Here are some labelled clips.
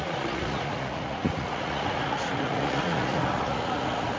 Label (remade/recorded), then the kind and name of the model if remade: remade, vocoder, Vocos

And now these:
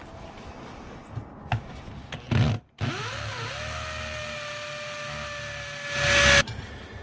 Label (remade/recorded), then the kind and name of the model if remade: recorded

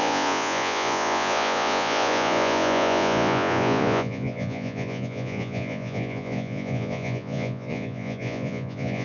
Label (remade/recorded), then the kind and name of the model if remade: remade, vocoder, Vocos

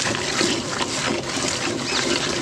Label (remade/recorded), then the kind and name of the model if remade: recorded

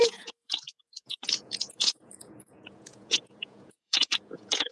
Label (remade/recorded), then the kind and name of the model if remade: remade, vocoder, Vocos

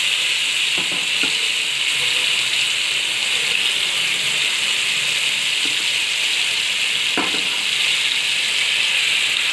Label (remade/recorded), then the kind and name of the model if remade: recorded